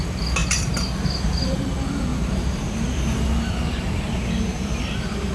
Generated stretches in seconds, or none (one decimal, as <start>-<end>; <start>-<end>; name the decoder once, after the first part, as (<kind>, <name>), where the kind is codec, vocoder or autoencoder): 0.4-1.6 (vocoder, BigVGAN v2); 2.1-5.3